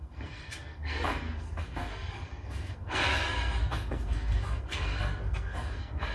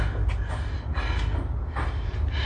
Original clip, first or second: second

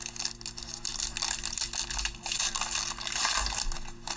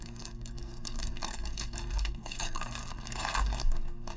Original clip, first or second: first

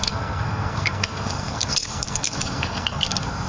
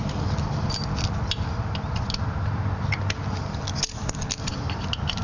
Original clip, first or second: second